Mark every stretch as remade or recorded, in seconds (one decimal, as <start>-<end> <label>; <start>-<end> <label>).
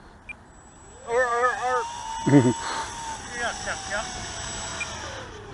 0.0-5.5 recorded